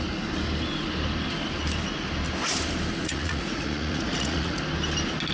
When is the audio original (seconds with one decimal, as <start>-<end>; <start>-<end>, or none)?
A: 0.0-3.0; 4.6-5.3